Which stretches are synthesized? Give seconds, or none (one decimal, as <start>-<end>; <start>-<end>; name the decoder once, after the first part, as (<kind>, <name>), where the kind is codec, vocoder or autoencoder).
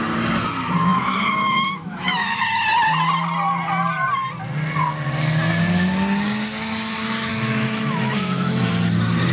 0.9-2.4 (autoencoder, DAC-VAE); 7.3-8.7